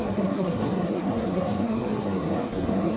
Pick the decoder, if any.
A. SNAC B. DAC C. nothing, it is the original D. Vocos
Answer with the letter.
A